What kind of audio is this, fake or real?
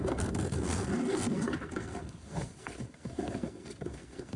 fake